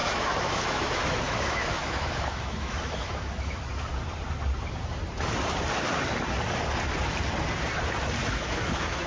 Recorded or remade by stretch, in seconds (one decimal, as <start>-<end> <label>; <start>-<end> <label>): 0.0-3.6 remade; 3.6-8.2 recorded; 8.2-9.1 remade